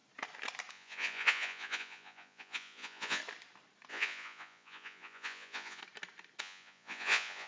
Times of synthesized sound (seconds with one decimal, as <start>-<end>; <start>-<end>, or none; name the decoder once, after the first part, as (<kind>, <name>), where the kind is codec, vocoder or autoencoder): 0.7-3.2 (vocoder, Vocos); 3.9-5.8; 6.4-7.5